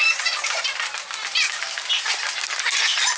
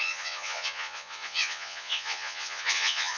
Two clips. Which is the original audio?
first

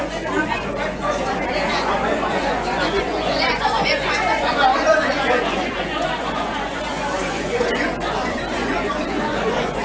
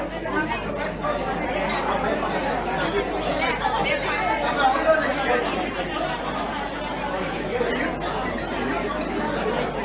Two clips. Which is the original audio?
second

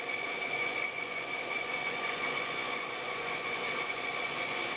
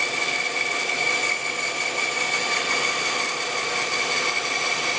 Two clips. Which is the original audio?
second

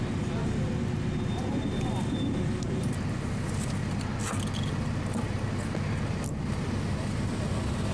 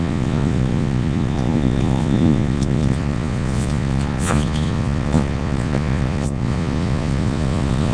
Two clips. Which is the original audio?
first